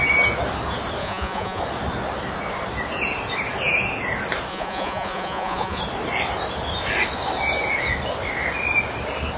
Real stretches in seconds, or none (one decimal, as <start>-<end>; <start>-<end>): 0.0-1.0; 1.6-4.5; 5.8-9.4